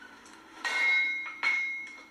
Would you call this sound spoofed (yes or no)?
yes